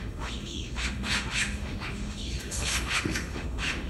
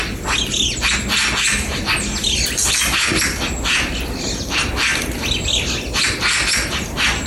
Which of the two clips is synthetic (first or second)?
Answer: first